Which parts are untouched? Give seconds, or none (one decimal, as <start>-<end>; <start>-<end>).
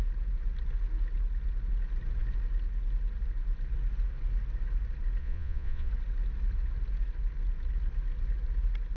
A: 0.0-5.2; 5.9-9.0